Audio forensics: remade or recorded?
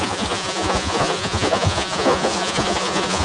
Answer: remade